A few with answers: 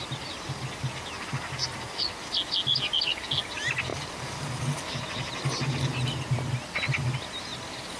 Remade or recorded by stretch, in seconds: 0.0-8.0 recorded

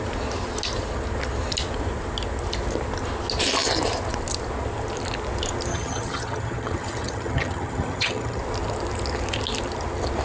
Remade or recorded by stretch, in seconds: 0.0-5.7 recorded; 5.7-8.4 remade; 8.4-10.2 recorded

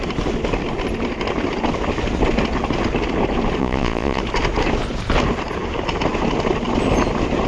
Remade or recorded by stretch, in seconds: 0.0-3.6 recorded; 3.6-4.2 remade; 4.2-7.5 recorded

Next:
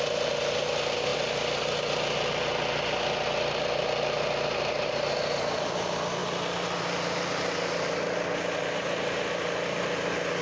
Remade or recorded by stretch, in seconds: 0.0-10.4 recorded